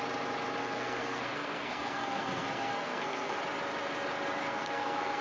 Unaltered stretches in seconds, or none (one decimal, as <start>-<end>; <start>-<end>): 0.0-0.6; 3.4-4.4